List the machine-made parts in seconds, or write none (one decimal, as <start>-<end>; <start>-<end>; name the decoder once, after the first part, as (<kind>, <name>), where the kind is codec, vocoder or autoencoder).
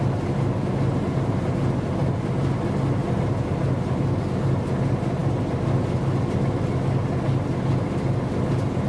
none